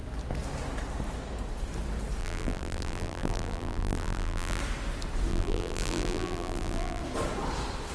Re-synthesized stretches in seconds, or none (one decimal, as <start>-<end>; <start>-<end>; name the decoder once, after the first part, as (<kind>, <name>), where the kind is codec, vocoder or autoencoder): 2.2-4.6 (vocoder, BigVGAN v2); 5.3-7.0